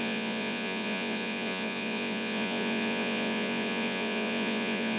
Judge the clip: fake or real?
fake